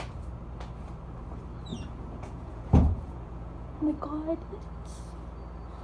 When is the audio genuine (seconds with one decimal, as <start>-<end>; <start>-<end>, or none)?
0.0-1.7; 4.0-5.8